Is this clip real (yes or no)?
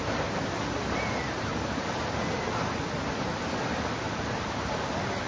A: yes